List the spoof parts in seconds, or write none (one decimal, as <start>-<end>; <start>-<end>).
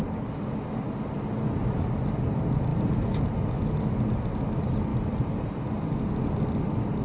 2.7-3.4; 4.9-5.6